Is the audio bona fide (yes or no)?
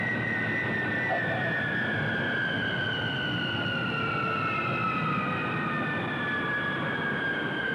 yes